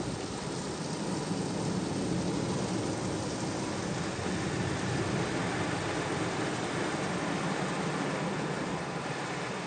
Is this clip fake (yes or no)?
no